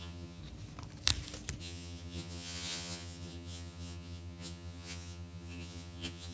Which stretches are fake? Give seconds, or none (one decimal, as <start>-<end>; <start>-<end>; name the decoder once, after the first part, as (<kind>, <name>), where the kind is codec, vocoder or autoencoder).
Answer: 0.0-0.4 (vocoder, HiFi-GAN); 1.6-6.3